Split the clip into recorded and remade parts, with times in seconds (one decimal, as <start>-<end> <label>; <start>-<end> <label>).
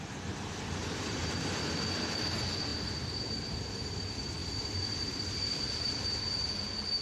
0.0-2.7 recorded; 2.7-3.7 remade; 3.7-4.4 recorded; 4.4-6.2 remade; 6.2-7.0 recorded